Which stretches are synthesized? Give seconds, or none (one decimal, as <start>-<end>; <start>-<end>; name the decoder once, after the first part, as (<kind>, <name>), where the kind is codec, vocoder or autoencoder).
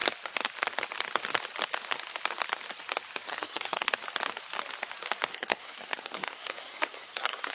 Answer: 3.3-3.9 (codec, SNAC); 5.3-7.5